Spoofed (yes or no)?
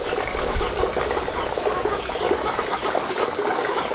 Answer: yes